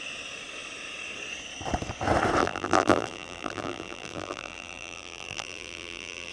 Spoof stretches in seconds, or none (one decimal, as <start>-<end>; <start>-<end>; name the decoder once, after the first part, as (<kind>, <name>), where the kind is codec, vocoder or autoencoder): 2.4-6.3 (vocoder, BigVGAN v2)